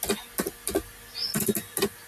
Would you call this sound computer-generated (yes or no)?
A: no